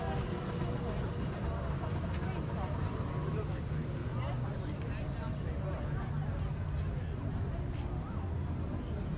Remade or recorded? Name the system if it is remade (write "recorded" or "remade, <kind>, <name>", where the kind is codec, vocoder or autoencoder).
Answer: recorded